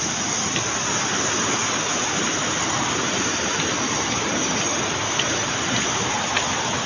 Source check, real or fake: fake